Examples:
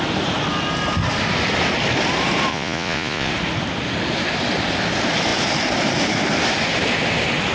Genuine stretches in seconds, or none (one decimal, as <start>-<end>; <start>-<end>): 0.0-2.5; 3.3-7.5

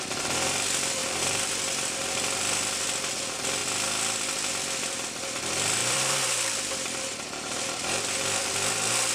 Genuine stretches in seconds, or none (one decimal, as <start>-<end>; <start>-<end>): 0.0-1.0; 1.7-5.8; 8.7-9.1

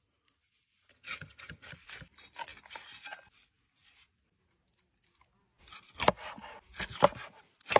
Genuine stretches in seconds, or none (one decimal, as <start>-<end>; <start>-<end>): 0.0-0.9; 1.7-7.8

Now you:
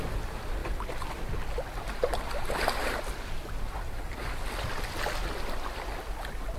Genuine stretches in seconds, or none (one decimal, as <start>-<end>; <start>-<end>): 0.0-6.6

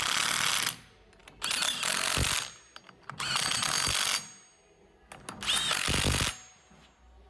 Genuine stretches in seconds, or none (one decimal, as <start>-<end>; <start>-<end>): 0.0-7.3

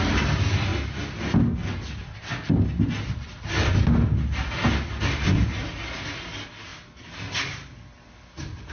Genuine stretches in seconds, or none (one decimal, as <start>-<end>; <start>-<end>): 0.0-8.7

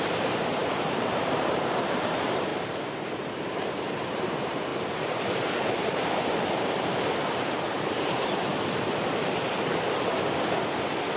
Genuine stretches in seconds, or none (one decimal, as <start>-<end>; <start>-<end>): 4.7-5.3; 8.5-11.2

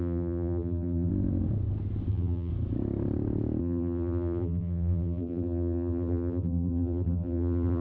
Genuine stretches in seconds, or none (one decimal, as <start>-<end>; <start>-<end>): 1.1-2.1; 2.5-3.6